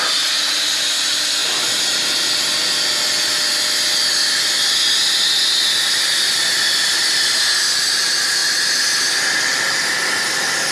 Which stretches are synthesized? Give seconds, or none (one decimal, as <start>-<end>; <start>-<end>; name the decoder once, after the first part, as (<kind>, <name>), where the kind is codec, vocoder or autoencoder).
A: none